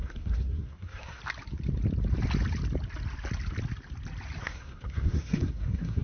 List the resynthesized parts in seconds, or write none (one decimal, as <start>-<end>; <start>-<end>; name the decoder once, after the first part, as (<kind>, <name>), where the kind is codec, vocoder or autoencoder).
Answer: 0.0-1.2 (codec, SNAC); 4.4-6.0